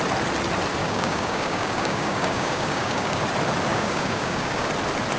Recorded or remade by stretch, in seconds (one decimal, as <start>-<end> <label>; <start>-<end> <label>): 0.0-0.8 recorded; 0.8-3.2 remade; 3.2-3.7 recorded; 3.7-4.7 remade; 4.7-5.2 recorded